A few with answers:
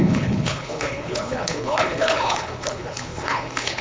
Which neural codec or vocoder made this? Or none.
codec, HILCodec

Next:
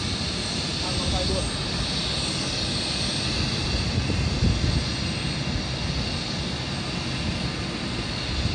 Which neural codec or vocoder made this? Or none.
none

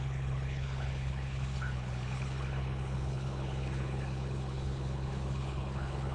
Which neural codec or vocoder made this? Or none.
codec, HILCodec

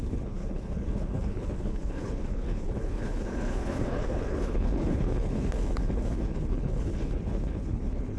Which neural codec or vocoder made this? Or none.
codec, HILCodec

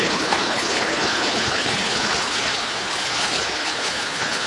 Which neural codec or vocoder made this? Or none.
codec, HILCodec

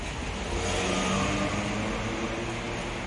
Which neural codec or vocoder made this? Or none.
none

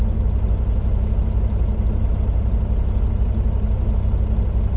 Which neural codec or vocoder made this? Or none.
none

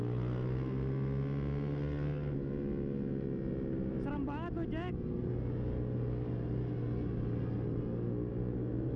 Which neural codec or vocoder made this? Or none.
none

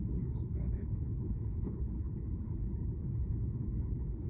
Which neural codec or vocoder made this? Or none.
codec, HILCodec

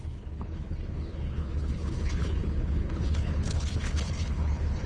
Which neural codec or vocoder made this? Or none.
codec, HILCodec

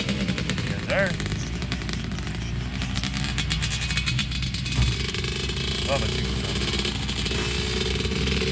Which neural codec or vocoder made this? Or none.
none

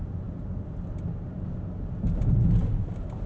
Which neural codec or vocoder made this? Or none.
none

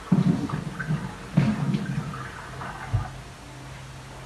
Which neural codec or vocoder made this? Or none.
none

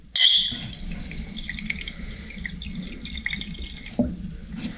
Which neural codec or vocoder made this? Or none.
none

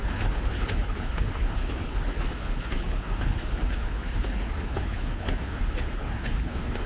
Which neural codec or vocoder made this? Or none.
codec, HILCodec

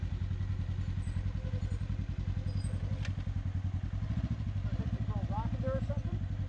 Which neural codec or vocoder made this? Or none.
none